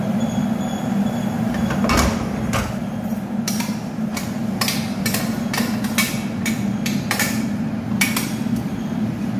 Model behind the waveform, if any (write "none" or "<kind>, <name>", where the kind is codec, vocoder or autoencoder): none